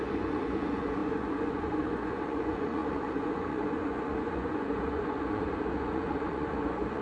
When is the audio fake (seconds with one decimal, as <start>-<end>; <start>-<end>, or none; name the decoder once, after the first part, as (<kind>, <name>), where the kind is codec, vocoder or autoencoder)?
0.0-7.0 (vocoder, Vocos)